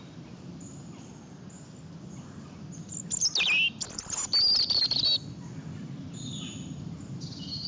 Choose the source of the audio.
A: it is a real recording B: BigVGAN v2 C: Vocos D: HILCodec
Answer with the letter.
A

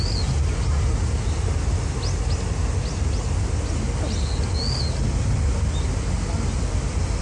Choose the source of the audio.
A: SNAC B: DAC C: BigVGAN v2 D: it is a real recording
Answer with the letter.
D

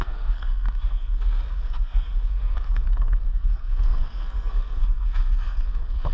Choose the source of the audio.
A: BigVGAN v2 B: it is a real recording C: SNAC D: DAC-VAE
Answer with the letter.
C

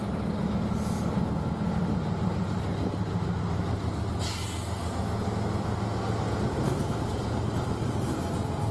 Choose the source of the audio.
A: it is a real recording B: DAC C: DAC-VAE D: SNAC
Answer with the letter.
A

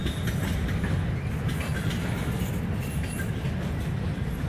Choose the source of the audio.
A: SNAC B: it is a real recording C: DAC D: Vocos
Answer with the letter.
B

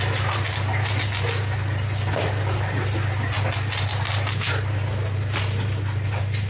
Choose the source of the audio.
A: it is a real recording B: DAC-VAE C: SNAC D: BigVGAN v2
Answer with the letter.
A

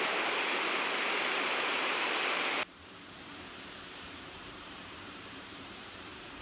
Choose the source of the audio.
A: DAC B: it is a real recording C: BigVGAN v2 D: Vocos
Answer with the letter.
C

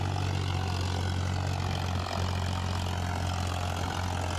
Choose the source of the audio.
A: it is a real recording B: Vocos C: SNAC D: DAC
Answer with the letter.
A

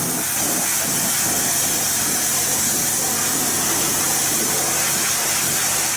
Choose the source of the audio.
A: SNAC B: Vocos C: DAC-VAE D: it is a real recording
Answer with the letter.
D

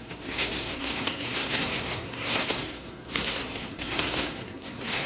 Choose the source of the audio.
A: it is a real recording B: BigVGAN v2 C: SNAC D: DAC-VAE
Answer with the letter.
C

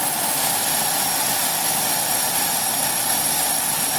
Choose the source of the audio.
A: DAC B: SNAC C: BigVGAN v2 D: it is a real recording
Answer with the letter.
D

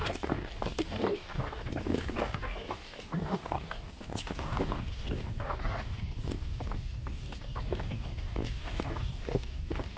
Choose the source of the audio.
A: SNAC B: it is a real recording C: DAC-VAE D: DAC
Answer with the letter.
D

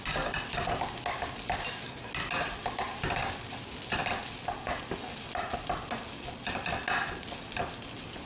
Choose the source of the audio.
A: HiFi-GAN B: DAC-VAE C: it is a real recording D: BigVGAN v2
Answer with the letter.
C